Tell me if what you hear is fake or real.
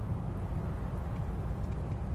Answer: real